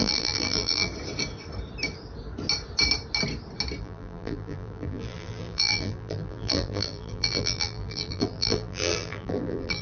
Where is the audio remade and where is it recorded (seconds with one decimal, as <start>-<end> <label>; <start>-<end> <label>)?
0.0-0.9 remade; 0.9-3.8 recorded; 3.8-9.8 remade